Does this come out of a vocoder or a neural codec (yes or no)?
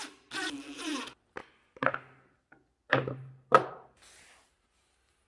no